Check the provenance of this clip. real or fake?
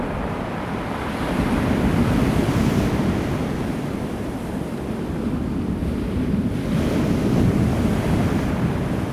real